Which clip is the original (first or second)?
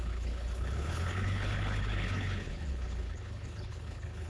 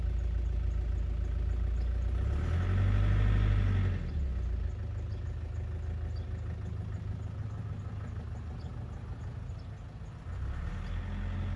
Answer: second